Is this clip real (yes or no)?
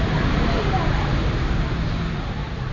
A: no